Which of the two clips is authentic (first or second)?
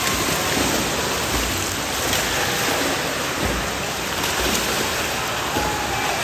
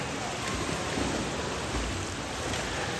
first